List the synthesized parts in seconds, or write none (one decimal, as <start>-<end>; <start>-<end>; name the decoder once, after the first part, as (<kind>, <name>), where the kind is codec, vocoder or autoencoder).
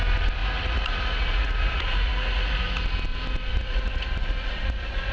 0.4-2.8 (vocoder, Vocos); 3.5-5.1